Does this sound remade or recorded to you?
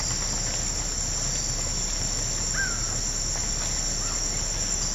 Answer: recorded